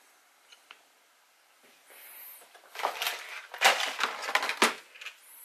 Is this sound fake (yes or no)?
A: no